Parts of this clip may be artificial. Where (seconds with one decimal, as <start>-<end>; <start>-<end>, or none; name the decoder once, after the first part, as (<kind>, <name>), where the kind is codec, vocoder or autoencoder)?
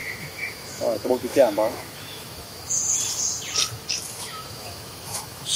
0.0-2.8 (autoencoder, DAC-VAE); 4.1-5.6